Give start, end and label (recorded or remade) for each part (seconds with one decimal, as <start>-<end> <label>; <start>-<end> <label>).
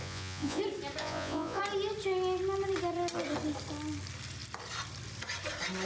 0.0-0.6 remade; 0.6-1.0 recorded; 1.0-1.6 remade; 1.6-5.9 recorded